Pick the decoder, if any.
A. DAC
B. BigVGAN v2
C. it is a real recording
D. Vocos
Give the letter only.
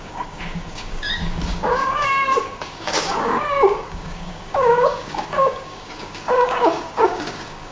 A